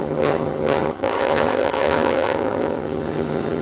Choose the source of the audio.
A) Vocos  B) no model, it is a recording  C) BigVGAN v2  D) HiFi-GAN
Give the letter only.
D